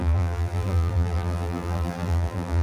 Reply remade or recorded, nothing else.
remade